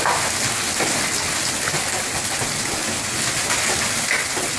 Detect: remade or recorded recorded